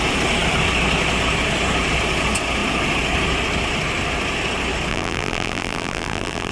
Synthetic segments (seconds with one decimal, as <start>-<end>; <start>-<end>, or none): 4.9-6.5